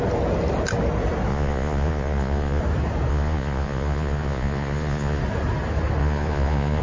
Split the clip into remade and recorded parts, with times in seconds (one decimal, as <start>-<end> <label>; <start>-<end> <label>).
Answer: 0.0-1.3 recorded; 1.3-2.6 remade; 2.6-3.1 recorded; 3.1-5.2 remade; 5.2-6.0 recorded; 6.0-6.8 remade